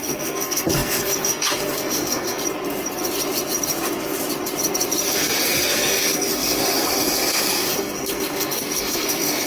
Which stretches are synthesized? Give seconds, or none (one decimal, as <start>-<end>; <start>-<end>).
0.0-2.4; 5.1-9.5

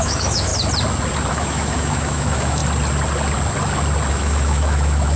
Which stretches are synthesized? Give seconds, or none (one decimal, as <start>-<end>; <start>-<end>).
0.0-0.5; 1.3-2.6; 4.1-5.2